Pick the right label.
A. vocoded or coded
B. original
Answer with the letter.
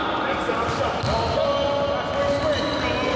B